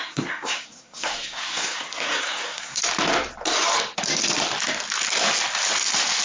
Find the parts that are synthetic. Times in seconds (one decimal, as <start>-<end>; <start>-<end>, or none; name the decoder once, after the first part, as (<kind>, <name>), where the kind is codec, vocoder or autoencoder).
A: 0.0-2.8 (codec, SNAC)